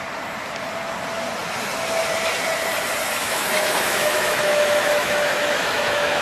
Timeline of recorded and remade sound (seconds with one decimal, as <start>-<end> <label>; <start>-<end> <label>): 0.0-3.2 recorded; 3.2-6.2 remade